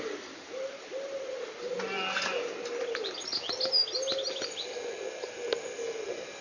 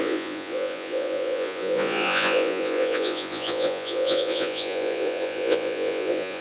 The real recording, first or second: first